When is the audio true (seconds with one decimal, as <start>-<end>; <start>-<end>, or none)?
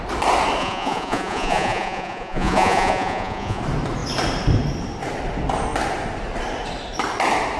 0.0-0.6; 3.6-7.6